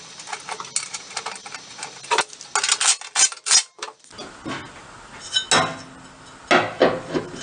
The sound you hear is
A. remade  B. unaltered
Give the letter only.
B